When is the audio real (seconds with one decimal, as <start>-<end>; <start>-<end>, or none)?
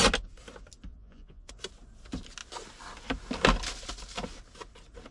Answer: 0.0-0.9; 1.5-5.1